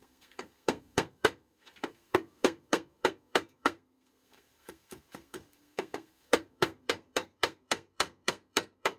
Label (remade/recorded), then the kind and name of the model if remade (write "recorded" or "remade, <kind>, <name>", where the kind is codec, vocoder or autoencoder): remade, codec, SNAC